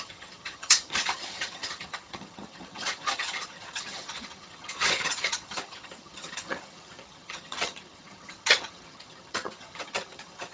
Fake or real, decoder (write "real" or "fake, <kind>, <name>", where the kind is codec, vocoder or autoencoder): fake, vocoder, HiFi-GAN